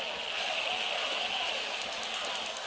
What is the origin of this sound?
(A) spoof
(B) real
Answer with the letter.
B